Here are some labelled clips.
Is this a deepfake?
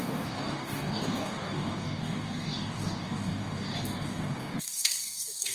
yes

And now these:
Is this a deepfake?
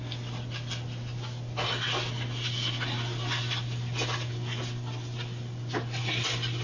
no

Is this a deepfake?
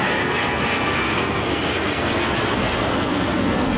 yes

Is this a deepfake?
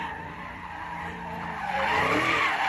yes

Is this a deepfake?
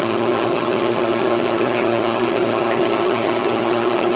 yes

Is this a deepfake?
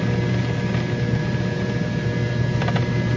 no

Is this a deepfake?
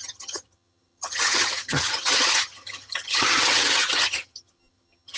yes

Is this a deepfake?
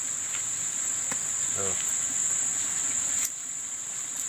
no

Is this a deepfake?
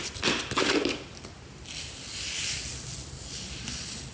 no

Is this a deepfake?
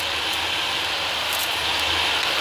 no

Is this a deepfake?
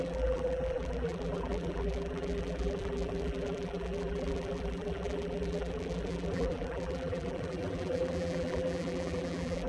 yes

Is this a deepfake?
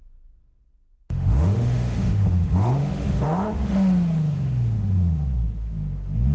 yes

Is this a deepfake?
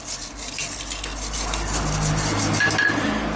no